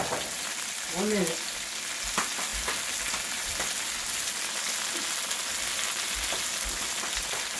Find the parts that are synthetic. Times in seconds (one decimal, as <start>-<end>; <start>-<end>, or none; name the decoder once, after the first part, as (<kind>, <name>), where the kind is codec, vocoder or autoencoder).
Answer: none